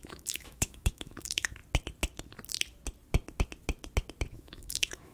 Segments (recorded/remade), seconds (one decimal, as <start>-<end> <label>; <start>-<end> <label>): 0.0-1.6 remade; 1.6-4.3 recorded; 4.3-5.1 remade